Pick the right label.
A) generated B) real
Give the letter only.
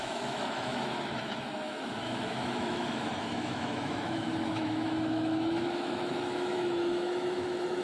A